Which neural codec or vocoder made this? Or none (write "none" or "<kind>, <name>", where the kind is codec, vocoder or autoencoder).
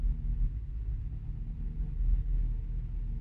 none